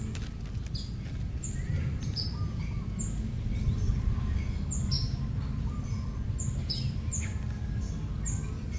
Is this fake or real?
real